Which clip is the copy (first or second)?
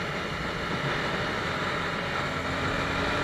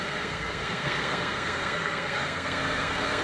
second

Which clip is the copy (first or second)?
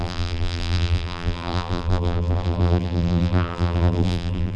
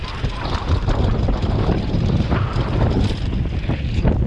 first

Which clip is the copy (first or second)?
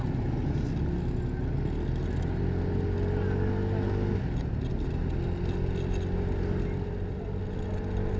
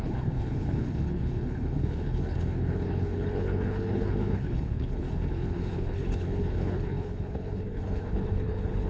second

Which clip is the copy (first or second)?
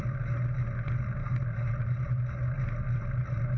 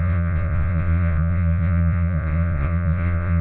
second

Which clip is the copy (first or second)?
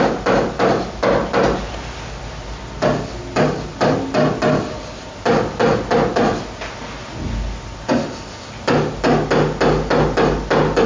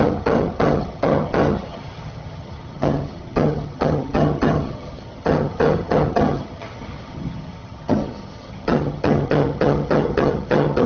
second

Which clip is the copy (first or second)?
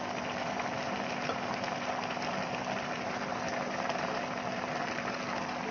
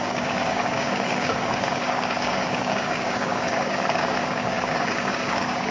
second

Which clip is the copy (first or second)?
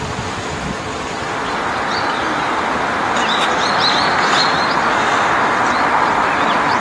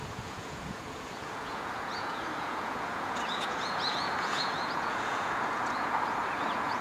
second